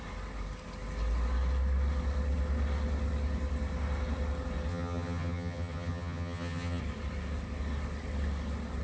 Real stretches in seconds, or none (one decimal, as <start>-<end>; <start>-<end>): 0.0-4.7; 6.8-8.8